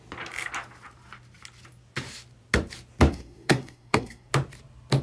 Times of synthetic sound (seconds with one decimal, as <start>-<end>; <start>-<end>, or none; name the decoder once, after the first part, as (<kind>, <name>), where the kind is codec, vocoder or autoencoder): 3.1-4.3 (codec, SNAC)